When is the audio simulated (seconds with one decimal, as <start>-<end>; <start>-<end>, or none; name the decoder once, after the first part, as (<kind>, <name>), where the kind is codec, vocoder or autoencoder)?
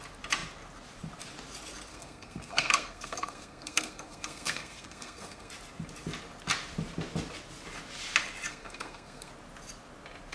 1.9-5.5 (codec, SNAC); 8.5-9.3